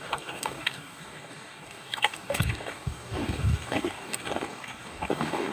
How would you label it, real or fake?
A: fake